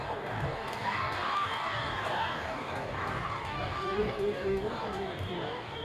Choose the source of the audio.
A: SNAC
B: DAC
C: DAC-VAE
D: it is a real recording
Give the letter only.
B